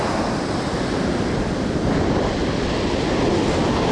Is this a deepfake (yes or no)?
no